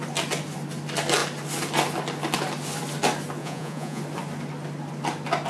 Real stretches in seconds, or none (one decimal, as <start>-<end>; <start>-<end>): 0.0-3.4; 4.0-5.5